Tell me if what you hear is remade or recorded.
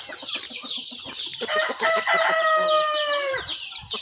remade